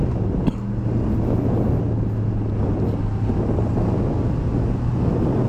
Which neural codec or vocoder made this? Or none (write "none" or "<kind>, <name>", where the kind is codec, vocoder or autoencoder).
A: none